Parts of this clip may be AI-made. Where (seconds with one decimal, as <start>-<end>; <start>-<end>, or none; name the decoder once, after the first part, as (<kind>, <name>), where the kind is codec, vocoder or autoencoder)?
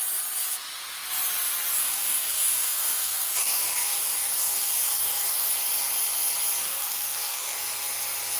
1.8-5.5 (codec, DAC); 6.6-7.6